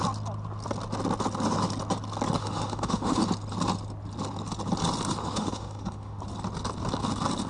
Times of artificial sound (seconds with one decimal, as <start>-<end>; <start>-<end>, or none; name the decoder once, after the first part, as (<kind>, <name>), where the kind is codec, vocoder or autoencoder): 2.4-3.2 (autoencoder, DAC-VAE); 5.2-6.2